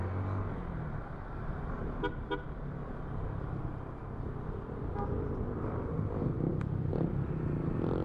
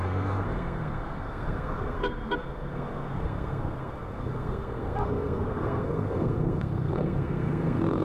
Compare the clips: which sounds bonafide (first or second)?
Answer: first